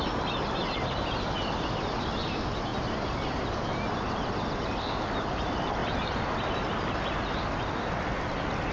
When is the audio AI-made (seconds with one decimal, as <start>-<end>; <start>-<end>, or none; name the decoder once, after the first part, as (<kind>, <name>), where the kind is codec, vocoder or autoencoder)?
none